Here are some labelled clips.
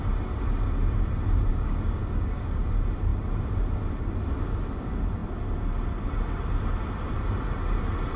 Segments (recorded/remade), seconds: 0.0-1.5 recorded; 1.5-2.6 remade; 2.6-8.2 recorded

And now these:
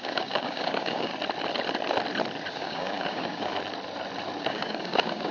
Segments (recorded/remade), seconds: 0.0-1.1 remade; 1.1-2.5 recorded; 2.5-3.5 remade; 3.5-4.4 recorded; 4.4-5.3 remade

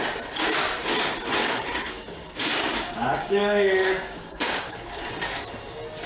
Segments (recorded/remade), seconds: 0.0-1.4 recorded; 1.4-5.1 remade; 5.1-6.1 recorded

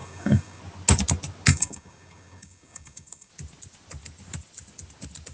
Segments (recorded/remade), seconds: 0.0-0.6 remade; 0.6-1.5 recorded; 1.5-3.3 remade; 3.3-5.3 recorded

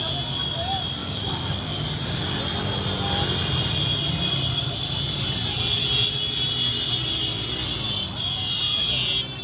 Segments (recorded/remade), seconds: 0.0-1.0 recorded; 1.0-2.4 remade; 2.4-9.4 recorded